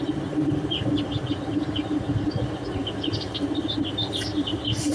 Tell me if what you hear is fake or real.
fake